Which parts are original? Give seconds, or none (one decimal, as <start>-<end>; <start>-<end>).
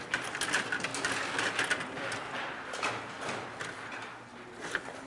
0.0-5.1